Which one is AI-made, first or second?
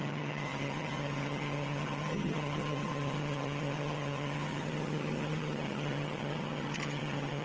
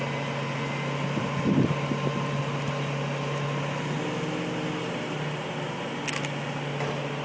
first